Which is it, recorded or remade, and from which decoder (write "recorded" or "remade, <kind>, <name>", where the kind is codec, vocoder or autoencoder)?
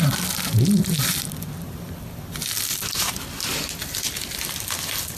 recorded